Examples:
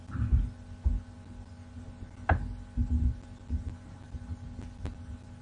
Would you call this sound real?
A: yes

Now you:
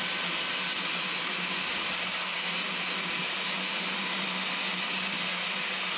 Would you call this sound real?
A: yes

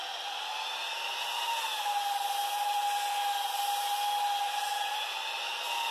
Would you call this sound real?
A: yes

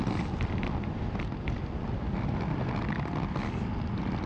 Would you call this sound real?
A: yes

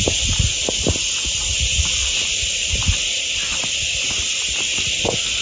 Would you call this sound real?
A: yes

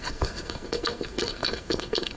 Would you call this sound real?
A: no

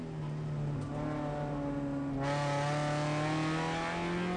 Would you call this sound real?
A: yes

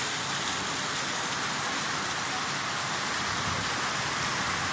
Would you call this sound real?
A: yes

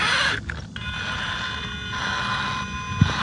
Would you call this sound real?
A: yes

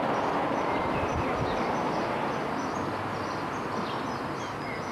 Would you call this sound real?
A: yes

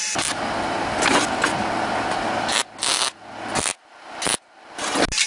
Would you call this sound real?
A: yes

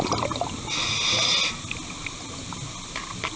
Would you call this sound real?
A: yes